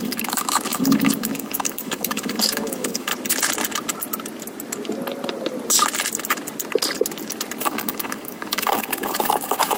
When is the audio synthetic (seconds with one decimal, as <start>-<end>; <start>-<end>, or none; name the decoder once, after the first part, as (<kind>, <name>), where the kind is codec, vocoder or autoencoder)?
0.0-3.1 (codec, DAC); 7.6-9.8